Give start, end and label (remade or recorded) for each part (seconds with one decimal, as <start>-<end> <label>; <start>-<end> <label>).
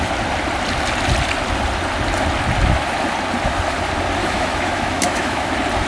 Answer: 0.0-4.2 recorded; 4.2-5.5 remade; 5.5-5.9 recorded